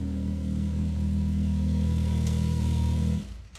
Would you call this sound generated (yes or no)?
yes